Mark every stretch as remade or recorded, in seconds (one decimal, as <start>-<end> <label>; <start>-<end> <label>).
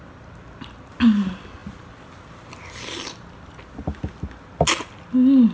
0.0-5.5 recorded